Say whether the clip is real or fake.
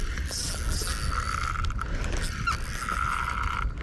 real